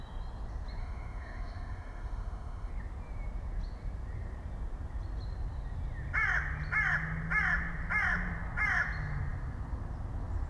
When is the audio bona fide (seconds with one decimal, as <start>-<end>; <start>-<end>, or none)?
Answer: 0.0-0.8; 2.7-10.5